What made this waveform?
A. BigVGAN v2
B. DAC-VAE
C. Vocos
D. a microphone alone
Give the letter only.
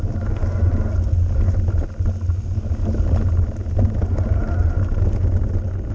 D